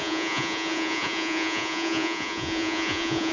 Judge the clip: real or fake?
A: fake